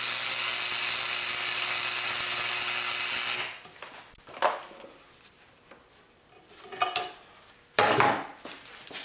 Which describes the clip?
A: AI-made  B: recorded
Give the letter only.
B